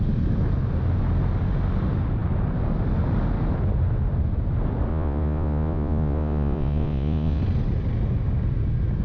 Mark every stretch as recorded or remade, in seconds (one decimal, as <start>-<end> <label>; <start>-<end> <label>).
0.0-4.9 recorded; 4.9-7.4 remade; 7.4-9.0 recorded